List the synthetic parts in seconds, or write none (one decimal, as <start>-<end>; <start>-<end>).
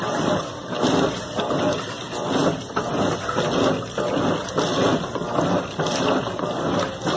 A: none